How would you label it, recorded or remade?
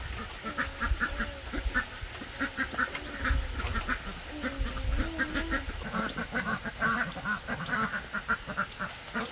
recorded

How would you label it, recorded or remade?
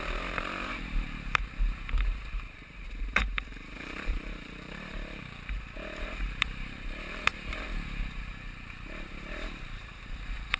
remade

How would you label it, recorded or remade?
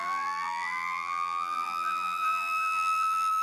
remade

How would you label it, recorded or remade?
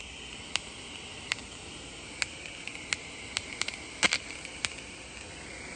recorded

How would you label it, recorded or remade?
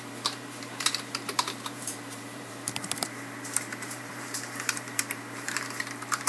remade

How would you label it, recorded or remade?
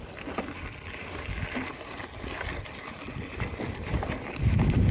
recorded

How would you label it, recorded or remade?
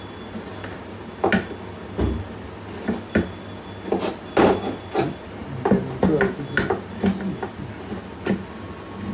recorded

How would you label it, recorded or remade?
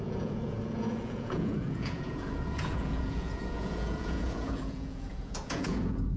remade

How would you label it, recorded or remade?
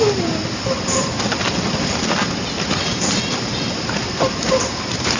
recorded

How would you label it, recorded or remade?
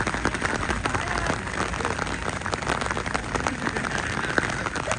remade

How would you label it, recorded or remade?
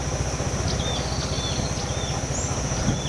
recorded